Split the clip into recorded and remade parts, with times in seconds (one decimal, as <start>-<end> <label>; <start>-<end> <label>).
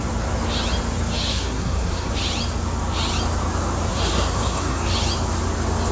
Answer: 0.0-1.3 recorded; 1.3-2.1 remade; 2.1-3.9 recorded; 3.9-4.8 remade; 4.8-5.9 recorded